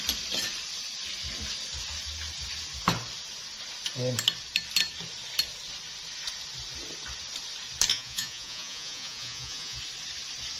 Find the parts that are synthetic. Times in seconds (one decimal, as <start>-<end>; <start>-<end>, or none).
7.9-9.8